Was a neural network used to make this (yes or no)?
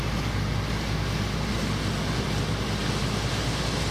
no